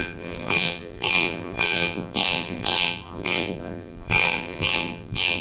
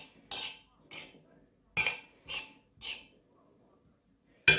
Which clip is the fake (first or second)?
first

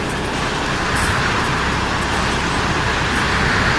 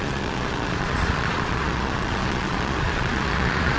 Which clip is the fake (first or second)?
second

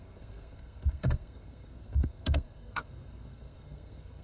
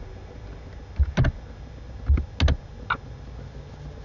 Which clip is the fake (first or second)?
first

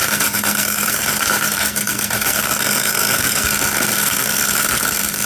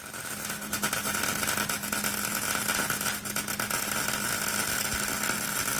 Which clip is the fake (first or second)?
first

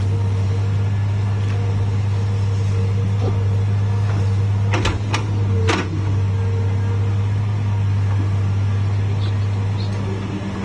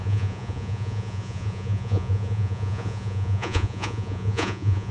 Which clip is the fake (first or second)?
second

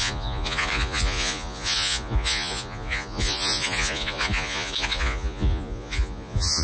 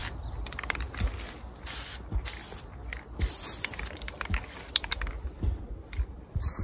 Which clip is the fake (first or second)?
first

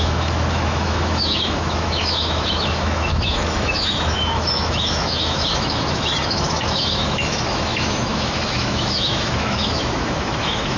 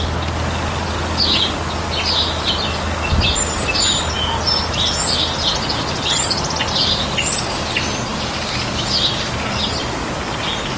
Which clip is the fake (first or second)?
first